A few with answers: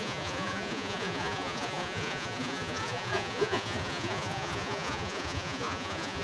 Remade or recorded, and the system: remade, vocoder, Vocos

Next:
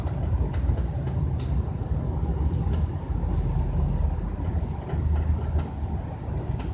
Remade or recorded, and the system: recorded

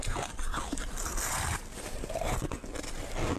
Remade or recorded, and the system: recorded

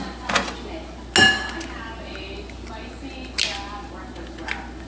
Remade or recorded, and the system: recorded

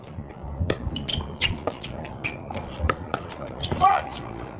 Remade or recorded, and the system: remade, vocoder, Vocos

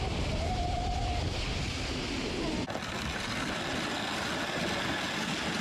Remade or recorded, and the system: recorded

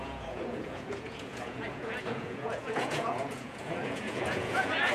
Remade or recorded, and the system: remade, vocoder, Vocos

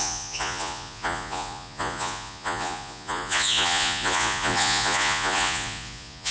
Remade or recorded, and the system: remade, vocoder, Vocos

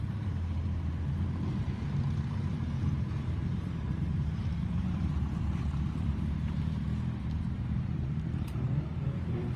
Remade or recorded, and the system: remade, vocoder, BigVGAN v2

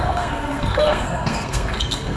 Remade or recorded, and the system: remade, codec, SNAC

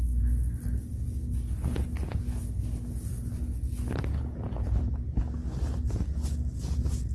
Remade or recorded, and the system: recorded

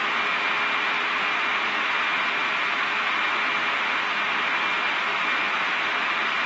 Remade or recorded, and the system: recorded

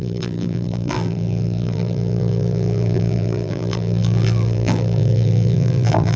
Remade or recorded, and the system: remade, vocoder, BigVGAN v2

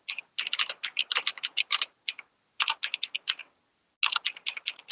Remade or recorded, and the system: recorded